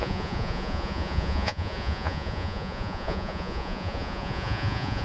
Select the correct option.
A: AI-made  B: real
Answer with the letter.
A